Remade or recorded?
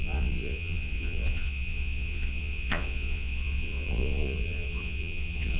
remade